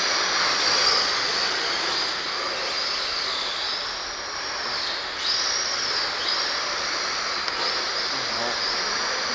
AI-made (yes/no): no